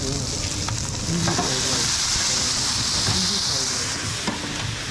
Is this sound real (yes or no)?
yes